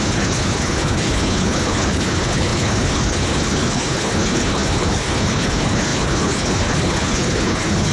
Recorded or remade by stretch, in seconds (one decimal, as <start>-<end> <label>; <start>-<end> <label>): 0.0-7.9 remade